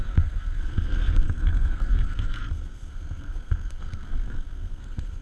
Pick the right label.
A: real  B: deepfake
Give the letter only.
B